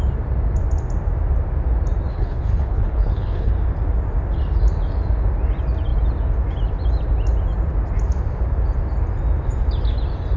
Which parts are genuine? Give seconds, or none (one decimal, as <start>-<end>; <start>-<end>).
0.0-2.1; 3.5-10.4